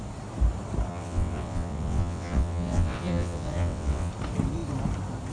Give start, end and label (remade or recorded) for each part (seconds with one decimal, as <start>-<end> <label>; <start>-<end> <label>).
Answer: 0.0-0.9 recorded; 0.9-4.1 remade; 4.1-5.3 recorded